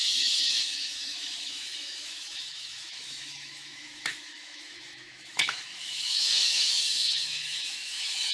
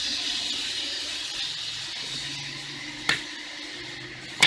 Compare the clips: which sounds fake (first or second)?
first